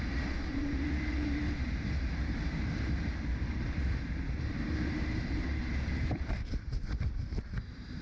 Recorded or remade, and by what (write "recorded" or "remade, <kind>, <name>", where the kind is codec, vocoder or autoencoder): remade, vocoder, BigVGAN v2